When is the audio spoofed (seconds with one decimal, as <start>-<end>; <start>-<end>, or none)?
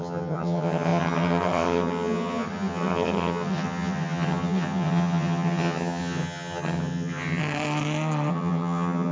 0.0-7.4; 8.3-9.1